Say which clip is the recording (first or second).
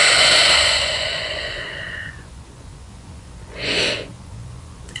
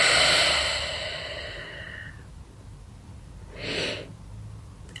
second